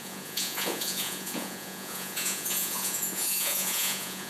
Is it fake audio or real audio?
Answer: fake